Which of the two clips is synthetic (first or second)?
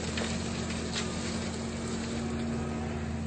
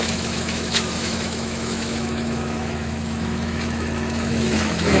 second